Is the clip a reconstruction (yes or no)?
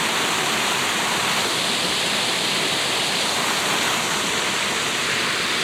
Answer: no